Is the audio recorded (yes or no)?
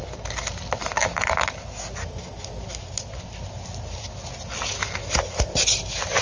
yes